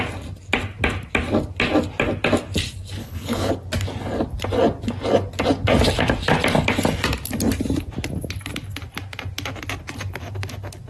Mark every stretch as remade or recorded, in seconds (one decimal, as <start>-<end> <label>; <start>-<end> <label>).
0.0-3.0 recorded; 3.0-3.5 remade; 3.5-10.9 recorded